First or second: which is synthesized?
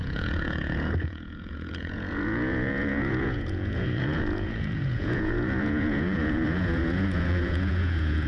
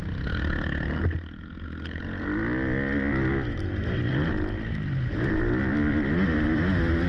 first